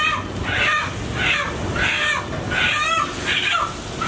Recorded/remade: recorded